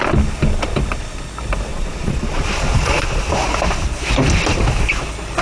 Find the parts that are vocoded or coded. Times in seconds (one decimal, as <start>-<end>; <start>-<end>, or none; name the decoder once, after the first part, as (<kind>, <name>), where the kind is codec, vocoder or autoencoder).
1.7-3.3 (vocoder, Vocos)